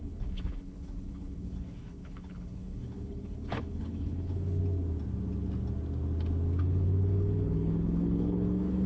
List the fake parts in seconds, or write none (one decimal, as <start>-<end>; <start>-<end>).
0.0-4.6; 6.6-8.9